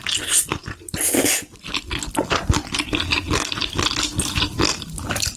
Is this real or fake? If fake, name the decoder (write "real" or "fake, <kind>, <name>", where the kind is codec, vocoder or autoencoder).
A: real